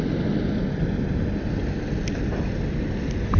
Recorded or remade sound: recorded